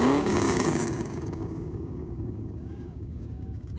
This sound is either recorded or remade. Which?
remade